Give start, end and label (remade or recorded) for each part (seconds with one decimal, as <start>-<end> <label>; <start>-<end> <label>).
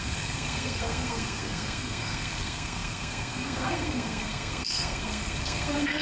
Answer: 0.0-6.0 remade